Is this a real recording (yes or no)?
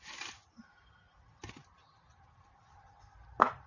yes